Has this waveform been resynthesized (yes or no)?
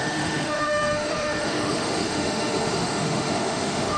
yes